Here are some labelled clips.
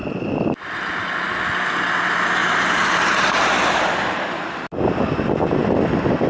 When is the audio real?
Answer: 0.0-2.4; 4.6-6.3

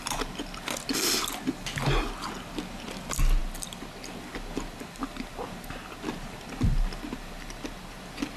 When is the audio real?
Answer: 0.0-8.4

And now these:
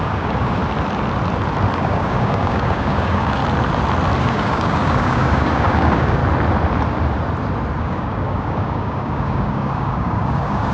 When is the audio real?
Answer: 0.6-1.8; 3.4-4.2; 6.2-7.8